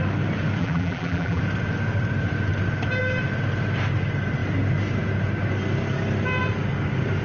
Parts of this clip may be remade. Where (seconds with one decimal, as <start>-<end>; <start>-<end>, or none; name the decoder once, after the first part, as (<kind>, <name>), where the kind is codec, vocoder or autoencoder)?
0.6-1.4 (vocoder, BigVGAN v2)